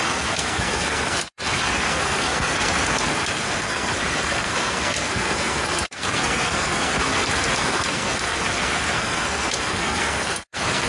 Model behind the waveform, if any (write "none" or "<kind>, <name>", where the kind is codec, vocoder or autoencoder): codec, SNAC